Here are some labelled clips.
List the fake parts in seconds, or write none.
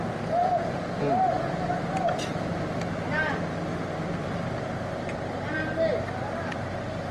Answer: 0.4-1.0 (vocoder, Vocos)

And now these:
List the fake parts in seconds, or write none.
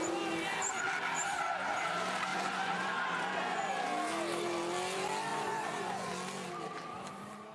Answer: 2.3-3.7 (vocoder, Vocos); 5.3-6.1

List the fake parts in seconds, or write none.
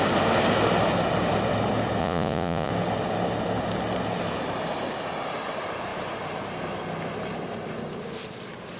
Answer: 2.0-2.7 (vocoder, Vocos)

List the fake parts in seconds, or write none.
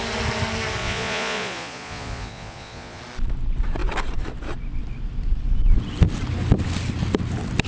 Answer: 0.8-3.0 (vocoder, Vocos)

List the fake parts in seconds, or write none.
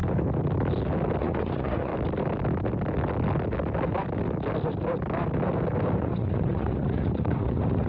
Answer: 1.2-1.9 (vocoder, Vocos); 6.0-7.9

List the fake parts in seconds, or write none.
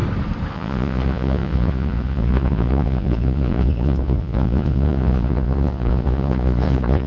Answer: 0.5-7.1 (vocoder, Vocos)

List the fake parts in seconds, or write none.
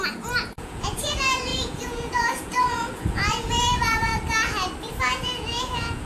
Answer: 0.0-4.1 (vocoder, Vocos); 5.0-6.1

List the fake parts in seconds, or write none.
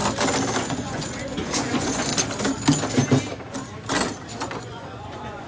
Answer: 0.6-2.1 (vocoder, Vocos); 4.6-5.5